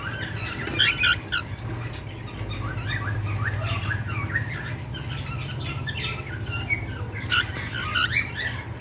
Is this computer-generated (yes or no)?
no